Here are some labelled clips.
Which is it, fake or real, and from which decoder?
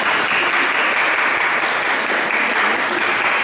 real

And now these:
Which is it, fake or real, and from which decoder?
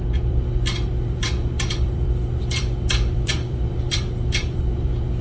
fake, vocoder, BigVGAN v2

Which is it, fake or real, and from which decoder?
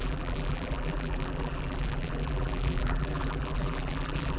fake, vocoder, BigVGAN v2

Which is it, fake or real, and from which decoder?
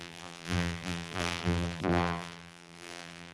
fake, vocoder, BigVGAN v2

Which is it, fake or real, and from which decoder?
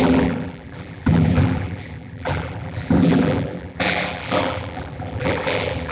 fake, vocoder, BigVGAN v2